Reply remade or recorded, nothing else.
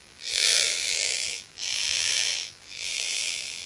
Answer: remade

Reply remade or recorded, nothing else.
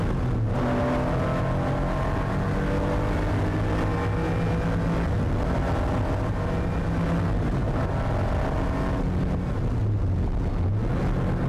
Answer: recorded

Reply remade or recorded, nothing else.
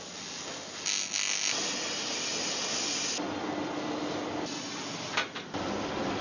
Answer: recorded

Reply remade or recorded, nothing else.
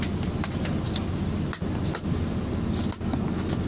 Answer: recorded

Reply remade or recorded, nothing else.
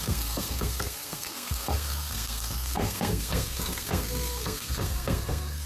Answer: remade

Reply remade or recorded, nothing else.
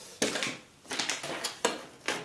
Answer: recorded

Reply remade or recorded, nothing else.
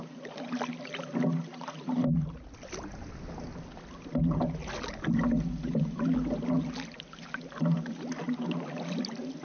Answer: recorded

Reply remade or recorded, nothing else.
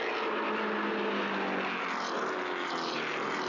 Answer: recorded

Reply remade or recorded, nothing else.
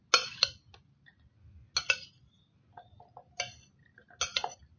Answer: recorded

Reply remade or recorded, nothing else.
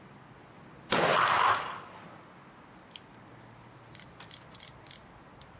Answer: recorded